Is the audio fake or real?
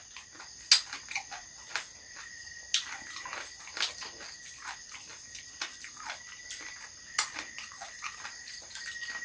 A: real